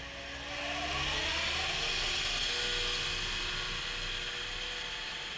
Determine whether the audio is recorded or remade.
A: recorded